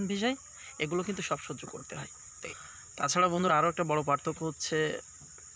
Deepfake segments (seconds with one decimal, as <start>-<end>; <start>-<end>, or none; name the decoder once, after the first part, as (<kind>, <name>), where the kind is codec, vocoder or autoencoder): 1.8-3.5 (vocoder, Vocos)